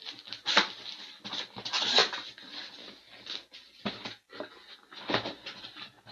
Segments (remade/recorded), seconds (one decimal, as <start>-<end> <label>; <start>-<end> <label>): 0.0-6.1 recorded